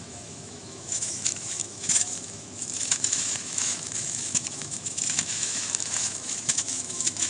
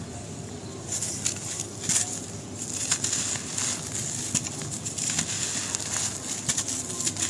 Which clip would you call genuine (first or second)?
second